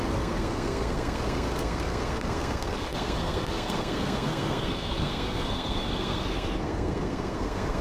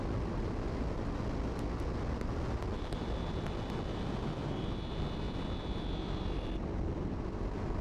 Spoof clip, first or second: first